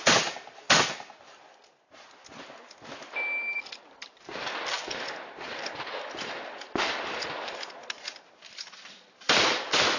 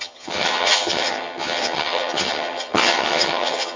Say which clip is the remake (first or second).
second